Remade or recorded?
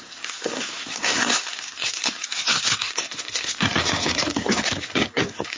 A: remade